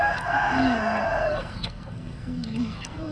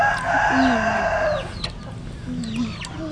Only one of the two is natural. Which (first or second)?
second